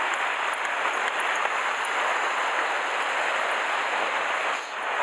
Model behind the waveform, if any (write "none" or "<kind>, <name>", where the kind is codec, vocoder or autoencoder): none